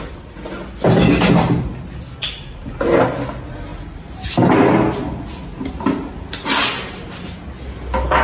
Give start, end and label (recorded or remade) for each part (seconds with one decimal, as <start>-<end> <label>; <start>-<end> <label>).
0.0-8.2 recorded